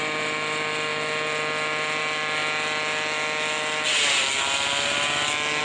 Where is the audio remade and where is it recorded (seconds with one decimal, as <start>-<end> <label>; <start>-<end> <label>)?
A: 0.0-5.6 recorded